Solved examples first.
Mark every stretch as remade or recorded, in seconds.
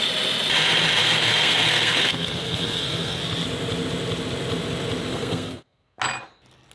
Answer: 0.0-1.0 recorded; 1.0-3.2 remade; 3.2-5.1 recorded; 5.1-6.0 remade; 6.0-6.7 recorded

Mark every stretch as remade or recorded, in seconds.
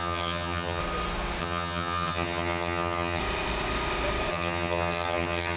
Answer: 0.0-0.8 remade; 0.8-1.4 recorded; 1.4-3.2 remade; 3.2-4.3 recorded; 4.3-5.6 remade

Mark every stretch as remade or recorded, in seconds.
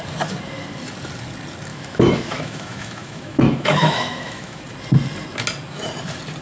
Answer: 0.0-1.7 recorded; 1.7-4.6 remade; 4.6-6.4 recorded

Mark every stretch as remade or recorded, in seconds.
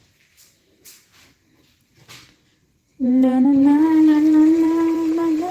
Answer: 0.0-2.9 recorded; 2.9-5.5 remade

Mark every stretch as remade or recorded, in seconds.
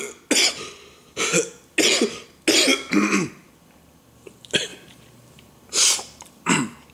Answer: 0.0-4.7 recorded; 4.7-6.5 remade; 6.5-6.9 recorded